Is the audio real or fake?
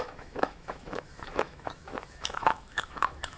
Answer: fake